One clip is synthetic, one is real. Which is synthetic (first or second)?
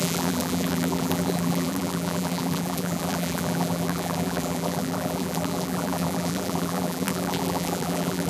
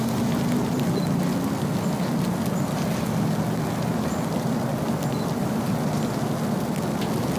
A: first